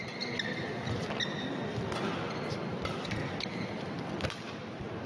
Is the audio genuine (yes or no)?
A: yes